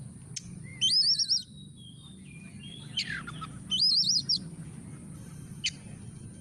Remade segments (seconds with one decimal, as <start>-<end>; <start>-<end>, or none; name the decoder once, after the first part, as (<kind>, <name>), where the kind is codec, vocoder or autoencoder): none